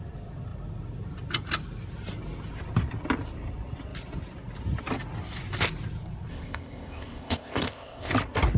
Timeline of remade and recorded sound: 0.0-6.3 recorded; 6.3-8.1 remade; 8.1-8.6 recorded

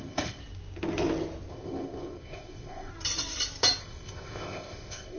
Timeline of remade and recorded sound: 0.0-0.4 remade; 0.4-1.5 recorded; 1.5-2.9 remade; 2.9-3.8 recorded; 3.8-5.2 remade

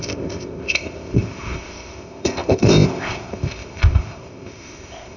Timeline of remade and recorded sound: 0.0-5.2 remade

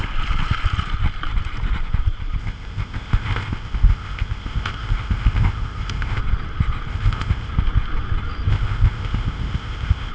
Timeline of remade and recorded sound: 0.0-2.4 recorded; 2.4-6.2 remade; 6.2-6.9 recorded; 6.9-7.5 remade; 7.5-8.5 recorded; 8.5-10.1 remade

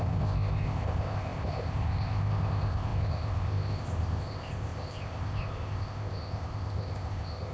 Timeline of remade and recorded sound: 0.0-7.5 remade